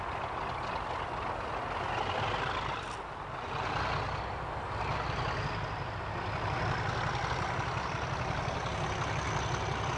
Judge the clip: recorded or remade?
recorded